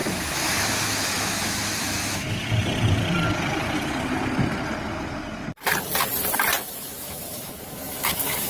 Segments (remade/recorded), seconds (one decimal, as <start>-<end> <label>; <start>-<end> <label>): 0.0-2.4 remade; 2.4-6.6 recorded; 6.6-8.5 remade